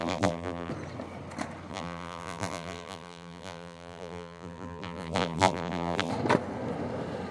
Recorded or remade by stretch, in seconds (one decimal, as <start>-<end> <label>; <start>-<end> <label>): 0.0-0.7 remade; 0.7-1.7 recorded; 1.7-6.1 remade; 6.1-7.3 recorded